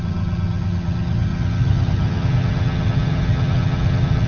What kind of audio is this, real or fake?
fake